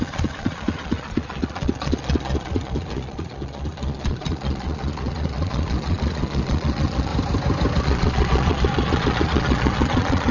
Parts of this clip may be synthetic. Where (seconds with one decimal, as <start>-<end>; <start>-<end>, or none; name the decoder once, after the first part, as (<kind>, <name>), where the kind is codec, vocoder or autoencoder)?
0.0-7.1 (vocoder, Vocos); 7.8-10.3